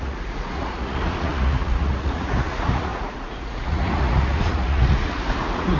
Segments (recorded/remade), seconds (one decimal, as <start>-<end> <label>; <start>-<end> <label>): 0.0-5.8 remade